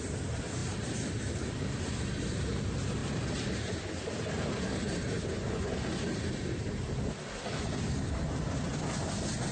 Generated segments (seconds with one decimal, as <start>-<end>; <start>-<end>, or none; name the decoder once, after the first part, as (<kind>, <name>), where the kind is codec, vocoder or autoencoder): none